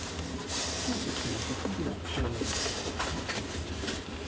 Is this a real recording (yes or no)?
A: yes